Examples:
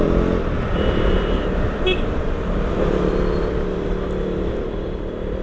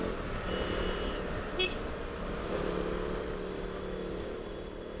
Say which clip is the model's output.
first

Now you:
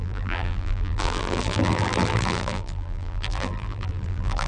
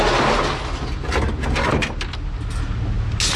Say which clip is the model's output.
first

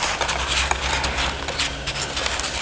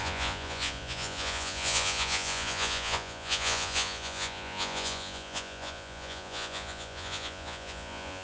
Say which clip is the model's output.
second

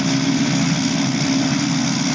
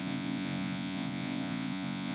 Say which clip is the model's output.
second